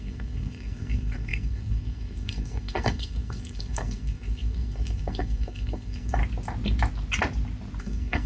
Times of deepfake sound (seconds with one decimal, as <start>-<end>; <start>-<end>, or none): 0.0-6.2; 7.8-8.3